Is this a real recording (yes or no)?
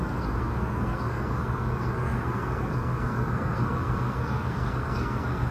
no